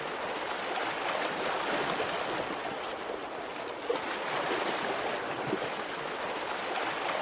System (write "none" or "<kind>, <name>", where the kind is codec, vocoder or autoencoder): none